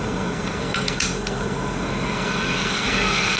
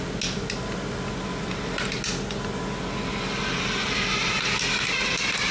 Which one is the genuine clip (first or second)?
second